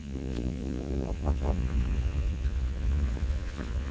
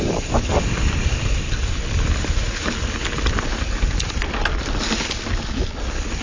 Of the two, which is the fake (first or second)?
first